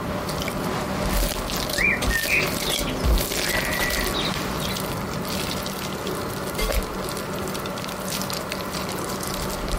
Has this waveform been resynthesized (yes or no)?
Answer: no